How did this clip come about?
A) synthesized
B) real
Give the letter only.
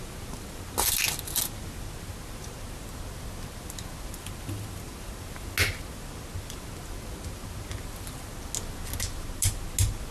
B